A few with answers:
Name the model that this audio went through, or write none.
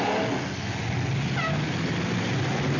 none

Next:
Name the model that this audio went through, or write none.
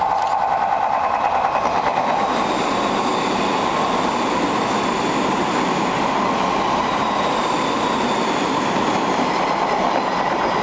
none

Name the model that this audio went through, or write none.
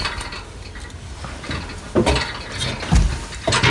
none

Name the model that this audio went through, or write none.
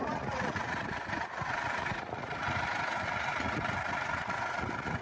vocoder, Vocos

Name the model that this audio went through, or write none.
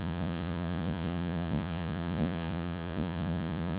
vocoder, Vocos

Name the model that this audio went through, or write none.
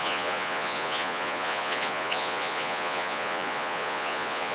vocoder, Vocos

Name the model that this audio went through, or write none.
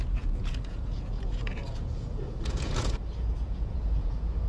vocoder, Vocos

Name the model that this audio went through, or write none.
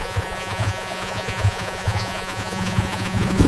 vocoder, Vocos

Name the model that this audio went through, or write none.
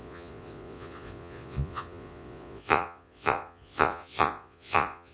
vocoder, Vocos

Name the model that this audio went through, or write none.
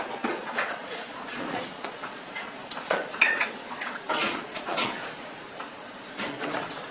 vocoder, Vocos